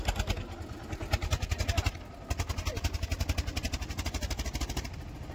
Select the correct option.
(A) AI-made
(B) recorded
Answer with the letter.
B